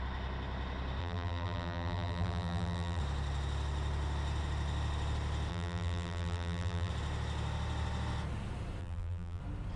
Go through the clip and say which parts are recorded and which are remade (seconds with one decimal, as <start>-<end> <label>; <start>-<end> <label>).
0.0-1.0 recorded; 1.0-3.0 remade; 3.0-5.5 recorded; 5.5-6.9 remade; 6.9-8.8 recorded; 8.8-9.4 remade; 9.4-9.8 recorded